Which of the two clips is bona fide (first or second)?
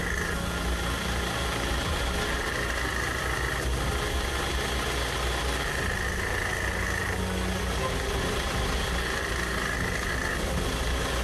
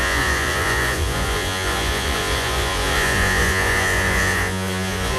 first